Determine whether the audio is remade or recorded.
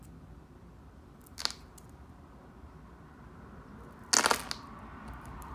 recorded